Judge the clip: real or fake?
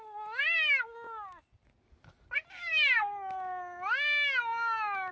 real